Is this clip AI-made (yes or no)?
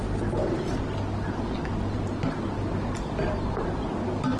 no